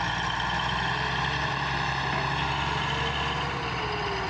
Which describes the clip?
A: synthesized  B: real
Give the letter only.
B